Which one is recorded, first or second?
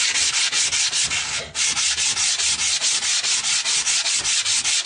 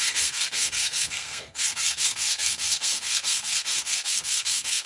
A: first